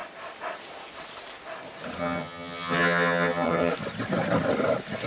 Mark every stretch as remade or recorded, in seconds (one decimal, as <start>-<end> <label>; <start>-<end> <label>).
0.0-2.0 recorded; 2.0-3.7 remade; 3.7-5.1 recorded

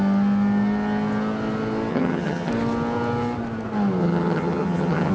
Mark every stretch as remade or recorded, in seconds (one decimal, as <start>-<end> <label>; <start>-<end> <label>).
0.0-1.9 recorded; 1.9-2.5 remade; 2.5-4.0 recorded; 4.0-5.1 remade

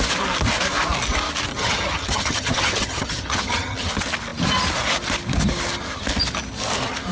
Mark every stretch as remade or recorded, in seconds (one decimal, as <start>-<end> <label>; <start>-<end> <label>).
0.0-1.5 recorded; 1.5-3.9 remade; 3.9-7.1 recorded

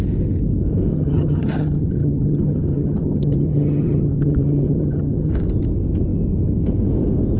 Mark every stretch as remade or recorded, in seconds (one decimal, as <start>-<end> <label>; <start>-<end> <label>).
0.0-0.9 recorded; 0.9-5.3 remade; 5.3-7.4 recorded

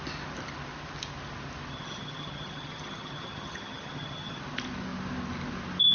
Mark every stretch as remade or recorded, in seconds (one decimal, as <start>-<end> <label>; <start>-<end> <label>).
0.0-1.7 recorded; 1.7-4.4 remade; 4.4-5.9 recorded

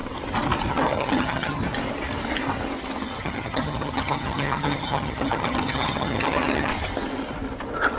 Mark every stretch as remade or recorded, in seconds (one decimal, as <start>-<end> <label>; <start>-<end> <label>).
0.0-0.7 recorded; 0.7-1.6 remade; 1.6-3.2 recorded; 3.2-6.7 remade; 6.7-8.0 recorded

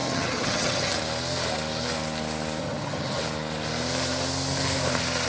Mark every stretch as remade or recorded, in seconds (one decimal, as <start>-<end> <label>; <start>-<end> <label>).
0.0-0.9 remade; 0.9-2.6 recorded; 2.6-3.2 remade; 3.2-5.3 recorded

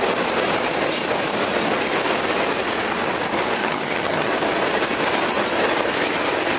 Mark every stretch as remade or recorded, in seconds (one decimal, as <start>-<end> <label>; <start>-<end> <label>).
0.0-3.6 recorded; 3.6-4.3 remade; 4.3-6.6 recorded